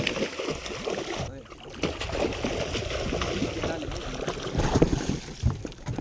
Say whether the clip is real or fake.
real